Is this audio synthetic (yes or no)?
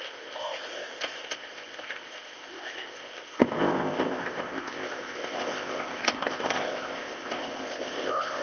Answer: yes